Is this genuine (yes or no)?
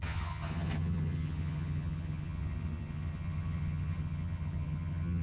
no